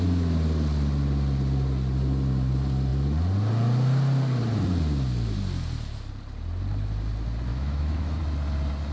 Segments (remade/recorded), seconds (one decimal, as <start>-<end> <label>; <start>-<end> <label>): 0.0-7.5 recorded; 7.5-8.2 remade; 8.2-8.9 recorded